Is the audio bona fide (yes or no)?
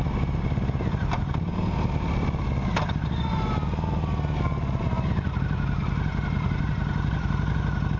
yes